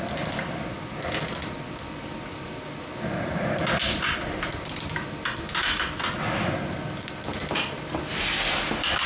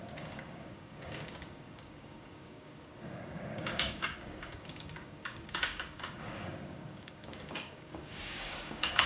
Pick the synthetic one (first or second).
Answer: second